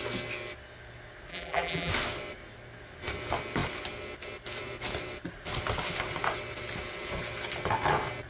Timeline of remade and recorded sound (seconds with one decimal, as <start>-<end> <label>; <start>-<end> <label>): 0.0-1.3 recorded; 1.3-1.9 remade; 1.9-8.3 recorded